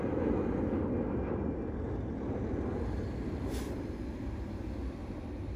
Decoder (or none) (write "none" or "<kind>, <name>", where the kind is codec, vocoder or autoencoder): none